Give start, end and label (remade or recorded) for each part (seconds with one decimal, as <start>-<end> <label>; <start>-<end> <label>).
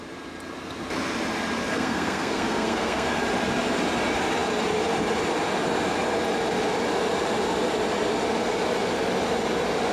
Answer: 0.0-1.7 recorded; 1.7-3.2 remade; 3.2-9.9 recorded